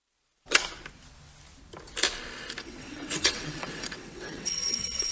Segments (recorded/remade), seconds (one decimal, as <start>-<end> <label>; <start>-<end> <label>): 0.0-2.6 recorded; 2.6-5.1 remade